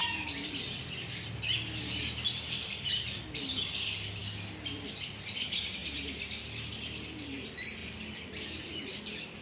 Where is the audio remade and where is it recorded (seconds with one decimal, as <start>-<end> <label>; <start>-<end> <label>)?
0.0-9.4 recorded